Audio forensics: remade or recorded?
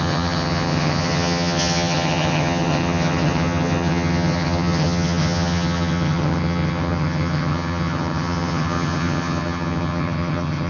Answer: remade